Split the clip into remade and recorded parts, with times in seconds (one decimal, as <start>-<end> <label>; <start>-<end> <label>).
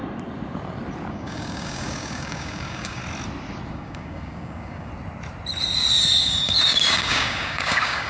0.0-1.1 recorded; 1.1-3.0 remade; 3.0-3.7 recorded; 3.7-4.9 remade; 4.9-6.2 recorded; 6.2-8.1 remade